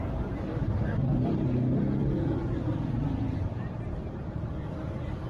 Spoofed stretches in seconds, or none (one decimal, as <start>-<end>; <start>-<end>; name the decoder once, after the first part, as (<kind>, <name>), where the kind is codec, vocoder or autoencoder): none